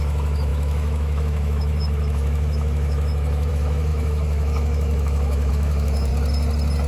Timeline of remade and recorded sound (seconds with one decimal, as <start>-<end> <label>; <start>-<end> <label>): 0.0-6.1 remade; 6.1-6.9 recorded